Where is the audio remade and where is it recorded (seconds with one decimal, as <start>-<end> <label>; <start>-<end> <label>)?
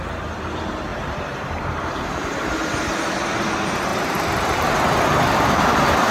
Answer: 0.0-0.9 recorded; 0.9-2.5 remade; 2.5-3.9 recorded; 3.9-6.1 remade